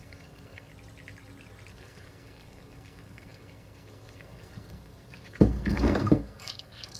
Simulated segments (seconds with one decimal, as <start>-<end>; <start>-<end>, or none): 0.0-0.7; 1.7-7.0